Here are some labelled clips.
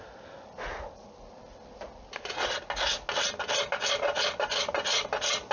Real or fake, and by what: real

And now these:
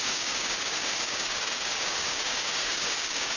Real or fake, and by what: fake, codec, DAC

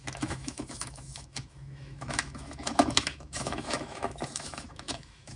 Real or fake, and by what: fake, autoencoder, DAC-VAE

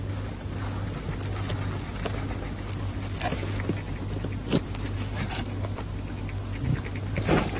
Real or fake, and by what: real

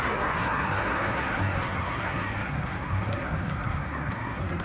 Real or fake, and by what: fake, codec, SNAC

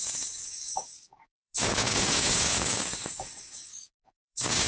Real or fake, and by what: fake, codec, DAC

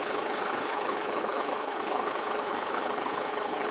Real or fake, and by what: fake, codec, HILCodec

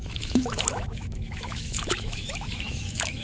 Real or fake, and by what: fake, autoencoder, DAC-VAE